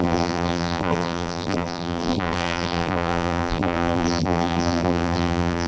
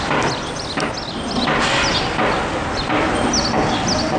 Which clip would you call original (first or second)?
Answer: second